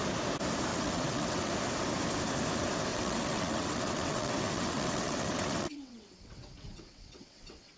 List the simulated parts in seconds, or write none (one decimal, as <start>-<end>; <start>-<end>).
0.7-1.5; 2.9-7.8